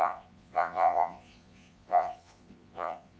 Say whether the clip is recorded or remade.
remade